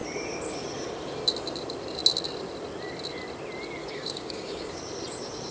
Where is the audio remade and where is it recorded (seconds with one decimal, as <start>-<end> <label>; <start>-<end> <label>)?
0.0-3.8 recorded; 3.8-4.8 remade; 4.8-5.5 recorded